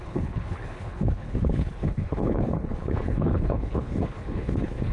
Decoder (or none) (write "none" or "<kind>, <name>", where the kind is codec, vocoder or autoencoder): codec, HILCodec